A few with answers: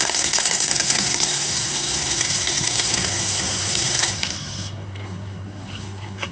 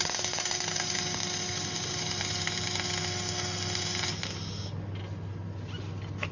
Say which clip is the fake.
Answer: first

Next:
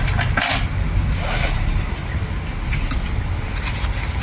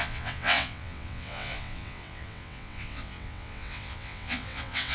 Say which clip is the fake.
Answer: second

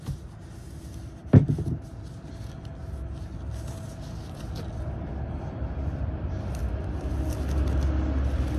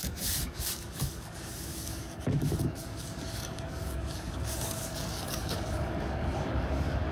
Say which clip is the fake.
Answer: second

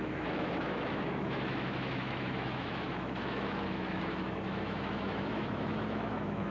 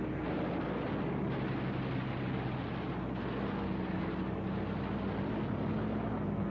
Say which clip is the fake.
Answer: first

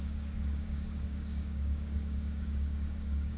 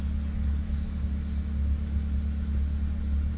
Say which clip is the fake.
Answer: first